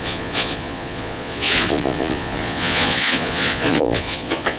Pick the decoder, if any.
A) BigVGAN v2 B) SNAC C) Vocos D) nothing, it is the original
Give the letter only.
C